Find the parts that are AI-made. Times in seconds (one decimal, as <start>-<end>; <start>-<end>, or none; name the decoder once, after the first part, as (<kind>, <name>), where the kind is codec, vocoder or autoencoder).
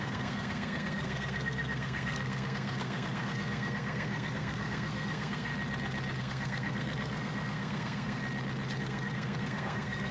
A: 0.0-5.5 (codec, SNAC); 6.2-8.2; 8.8-10.1